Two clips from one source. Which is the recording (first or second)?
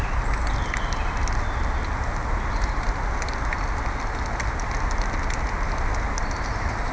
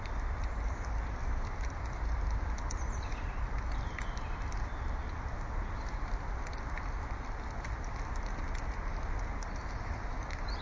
first